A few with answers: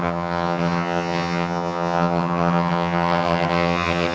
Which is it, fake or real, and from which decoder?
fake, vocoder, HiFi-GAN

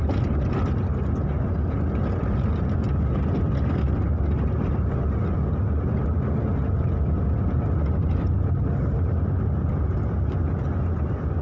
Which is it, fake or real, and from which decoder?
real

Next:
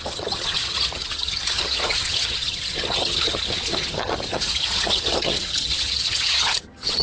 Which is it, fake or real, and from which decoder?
fake, vocoder, HiFi-GAN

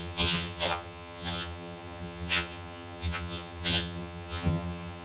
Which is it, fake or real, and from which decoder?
fake, vocoder, HiFi-GAN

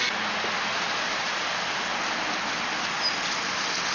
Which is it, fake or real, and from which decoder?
real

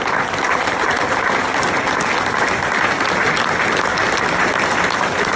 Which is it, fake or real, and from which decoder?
real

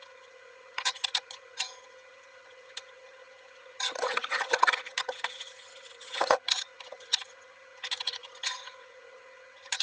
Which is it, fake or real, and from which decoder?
fake, vocoder, HiFi-GAN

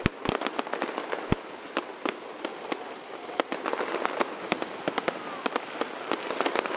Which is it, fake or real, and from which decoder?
real